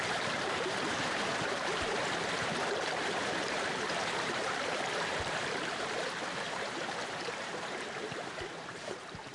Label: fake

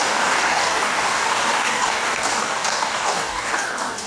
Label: fake